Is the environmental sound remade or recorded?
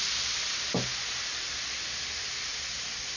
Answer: recorded